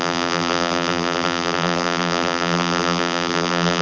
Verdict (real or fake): fake